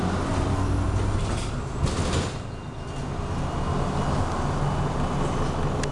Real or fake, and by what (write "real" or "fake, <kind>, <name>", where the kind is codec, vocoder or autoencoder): real